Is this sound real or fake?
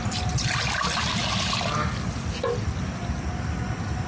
real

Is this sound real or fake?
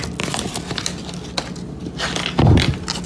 real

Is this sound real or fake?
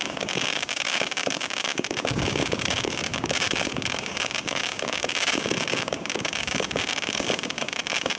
fake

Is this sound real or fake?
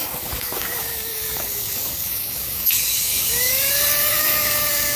fake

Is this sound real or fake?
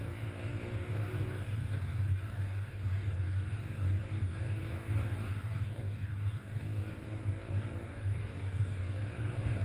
fake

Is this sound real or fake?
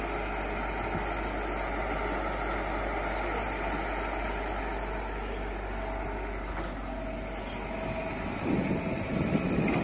real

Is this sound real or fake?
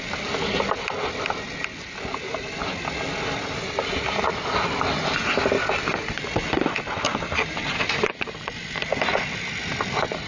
real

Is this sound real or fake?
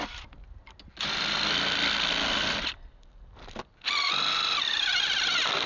real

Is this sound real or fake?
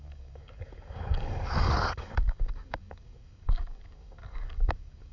fake